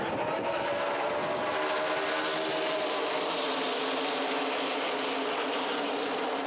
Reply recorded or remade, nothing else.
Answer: recorded